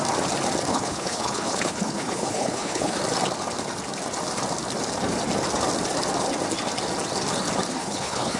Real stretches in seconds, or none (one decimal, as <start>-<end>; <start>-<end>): 0.0-0.7; 3.0-7.8